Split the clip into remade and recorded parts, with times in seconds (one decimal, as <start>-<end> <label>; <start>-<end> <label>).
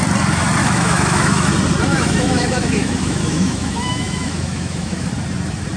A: 0.0-0.6 recorded; 0.6-1.5 remade; 1.5-1.9 recorded; 1.9-5.1 remade; 5.1-5.8 recorded